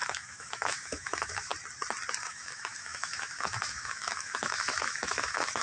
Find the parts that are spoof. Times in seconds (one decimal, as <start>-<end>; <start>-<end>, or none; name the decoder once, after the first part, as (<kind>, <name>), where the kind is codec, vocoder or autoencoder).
0.0-1.5 (autoencoder, DAC-VAE); 2.2-5.6